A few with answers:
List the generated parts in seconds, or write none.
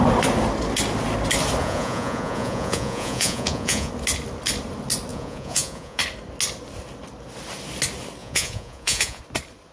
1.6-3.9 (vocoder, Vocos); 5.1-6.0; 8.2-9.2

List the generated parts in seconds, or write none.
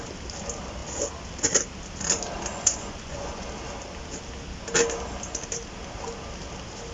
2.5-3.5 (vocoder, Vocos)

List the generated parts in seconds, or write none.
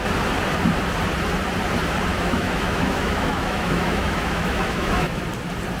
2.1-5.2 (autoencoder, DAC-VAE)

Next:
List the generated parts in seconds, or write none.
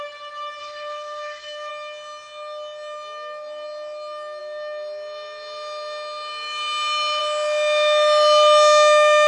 0.6-1.7 (autoencoder, DAC-VAE)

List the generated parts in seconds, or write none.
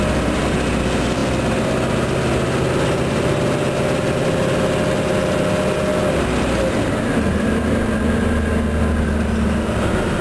none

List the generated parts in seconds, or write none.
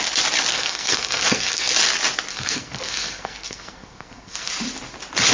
0.5-1.7 (codec, SNAC); 2.3-4.5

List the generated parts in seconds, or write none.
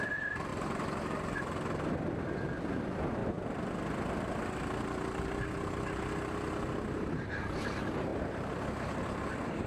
none